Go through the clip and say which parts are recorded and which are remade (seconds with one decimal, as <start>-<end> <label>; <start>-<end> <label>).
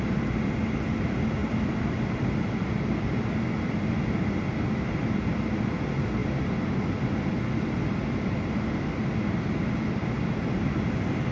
0.0-11.3 recorded